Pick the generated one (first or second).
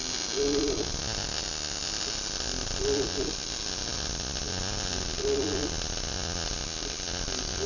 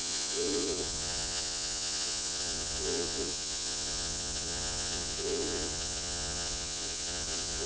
second